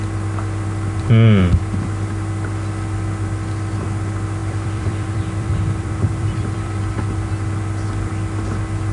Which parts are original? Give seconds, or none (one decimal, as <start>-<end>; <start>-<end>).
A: 0.0-4.4; 7.3-8.9

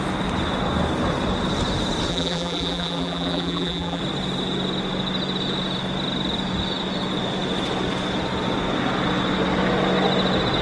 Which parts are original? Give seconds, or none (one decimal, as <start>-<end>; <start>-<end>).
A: 0.0-2.1; 4.0-10.6

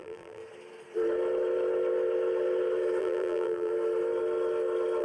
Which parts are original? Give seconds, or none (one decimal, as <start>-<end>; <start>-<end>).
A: 0.4-3.0; 3.7-5.0